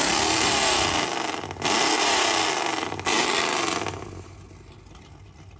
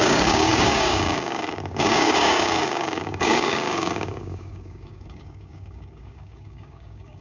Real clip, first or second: first